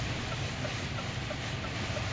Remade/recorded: recorded